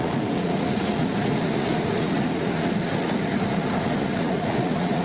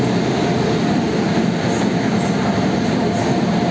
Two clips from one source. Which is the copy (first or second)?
first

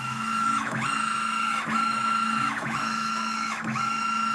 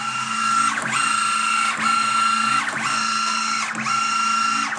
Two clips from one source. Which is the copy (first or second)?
first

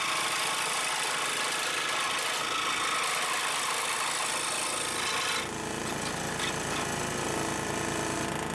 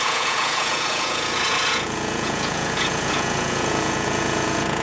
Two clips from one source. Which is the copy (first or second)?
second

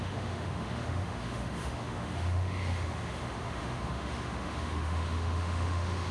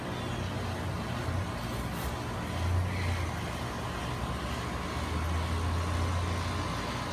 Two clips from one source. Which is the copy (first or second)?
first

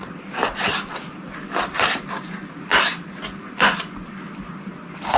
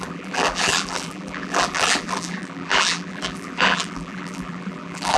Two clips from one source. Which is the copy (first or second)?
second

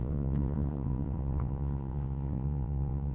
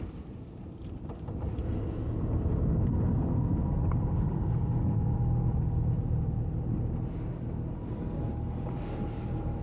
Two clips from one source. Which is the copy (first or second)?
first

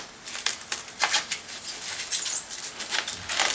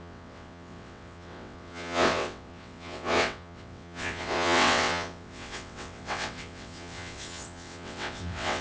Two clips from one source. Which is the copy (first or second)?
second